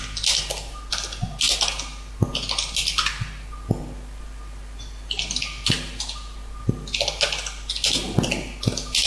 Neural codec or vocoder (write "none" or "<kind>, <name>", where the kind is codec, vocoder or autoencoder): none